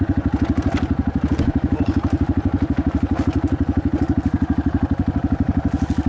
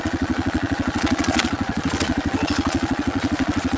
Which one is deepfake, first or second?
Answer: second